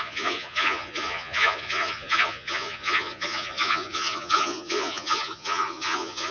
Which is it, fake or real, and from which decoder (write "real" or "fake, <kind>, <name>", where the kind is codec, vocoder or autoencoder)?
fake, vocoder, Vocos